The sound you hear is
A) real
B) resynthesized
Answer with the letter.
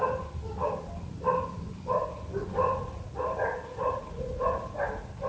A